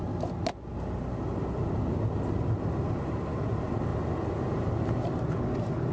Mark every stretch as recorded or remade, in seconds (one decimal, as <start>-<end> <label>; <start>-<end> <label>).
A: 0.0-5.9 recorded